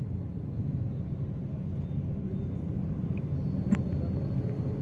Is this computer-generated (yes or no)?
no